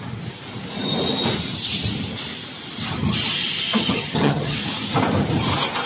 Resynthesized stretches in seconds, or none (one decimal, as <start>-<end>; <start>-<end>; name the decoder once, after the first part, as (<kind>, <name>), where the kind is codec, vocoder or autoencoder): 3.8-4.6 (vocoder, HiFi-GAN)